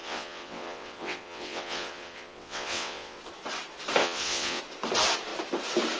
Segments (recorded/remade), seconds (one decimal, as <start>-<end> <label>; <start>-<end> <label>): 0.0-3.2 remade; 3.2-4.0 recorded; 4.0-4.6 remade; 4.6-6.0 recorded